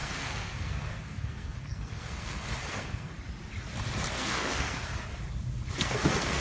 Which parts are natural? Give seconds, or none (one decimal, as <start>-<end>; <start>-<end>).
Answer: 3.1-4.1; 5.1-5.7